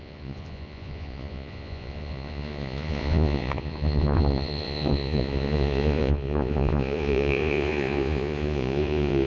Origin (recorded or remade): remade